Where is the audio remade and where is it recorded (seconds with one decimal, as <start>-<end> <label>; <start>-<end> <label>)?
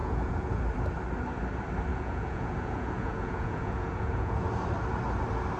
0.0-0.6 remade; 0.6-1.9 recorded; 1.9-4.5 remade; 4.5-5.6 recorded